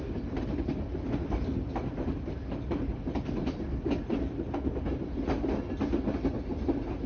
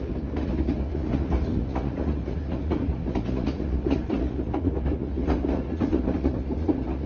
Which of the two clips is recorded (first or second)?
first